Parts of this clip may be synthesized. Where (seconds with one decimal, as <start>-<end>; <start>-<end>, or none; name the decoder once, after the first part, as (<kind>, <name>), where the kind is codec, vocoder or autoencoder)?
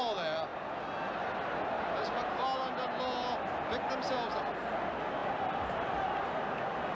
5.2-6.1 (vocoder, BigVGAN v2)